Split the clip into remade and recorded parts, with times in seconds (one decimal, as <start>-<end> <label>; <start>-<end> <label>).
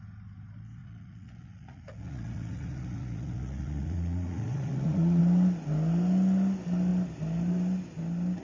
0.0-0.8 recorded; 0.8-5.2 remade; 5.2-8.4 recorded